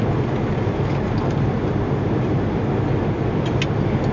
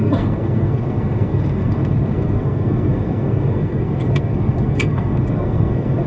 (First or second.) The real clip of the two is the first